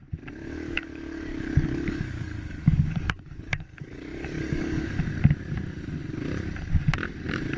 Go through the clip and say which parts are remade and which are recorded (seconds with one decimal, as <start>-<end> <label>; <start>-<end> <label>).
0.0-0.4 recorded; 0.4-5.0 remade; 5.0-7.6 recorded